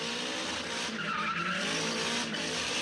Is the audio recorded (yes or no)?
yes